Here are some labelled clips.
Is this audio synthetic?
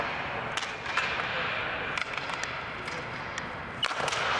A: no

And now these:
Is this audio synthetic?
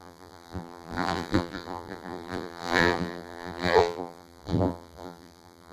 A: yes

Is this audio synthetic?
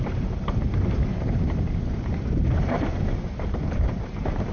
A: yes